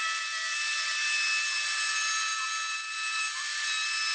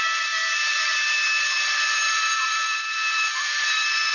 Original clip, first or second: first